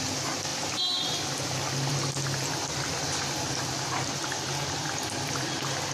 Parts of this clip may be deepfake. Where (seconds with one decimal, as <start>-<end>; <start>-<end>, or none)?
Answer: none